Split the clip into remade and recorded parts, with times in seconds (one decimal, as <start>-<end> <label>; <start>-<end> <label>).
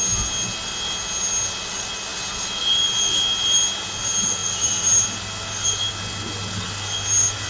0.0-7.5 recorded